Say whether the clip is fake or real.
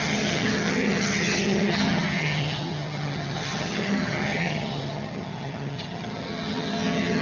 fake